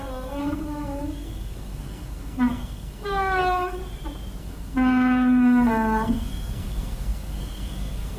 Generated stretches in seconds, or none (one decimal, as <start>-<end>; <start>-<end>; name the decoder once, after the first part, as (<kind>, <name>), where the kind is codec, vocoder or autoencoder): 0.0-3.8 (codec, SNAC); 4.4-8.2